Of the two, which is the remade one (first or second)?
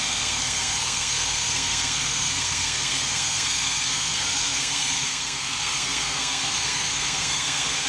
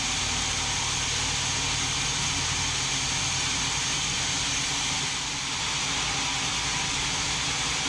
first